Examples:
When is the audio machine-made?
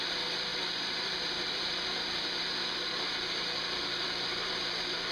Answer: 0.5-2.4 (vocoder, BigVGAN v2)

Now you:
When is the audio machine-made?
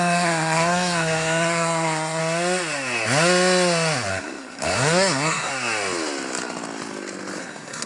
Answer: 0.0-2.2 (codec, SNAC); 4.1-5.5; 7.4-7.9